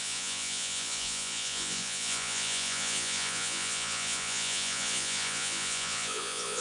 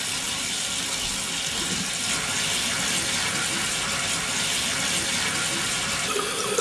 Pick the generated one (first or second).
first